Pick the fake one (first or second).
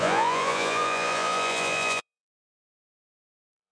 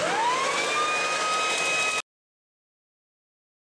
first